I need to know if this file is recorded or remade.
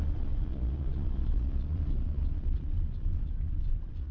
remade